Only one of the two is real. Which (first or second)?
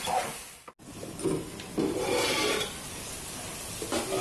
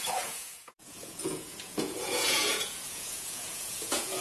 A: first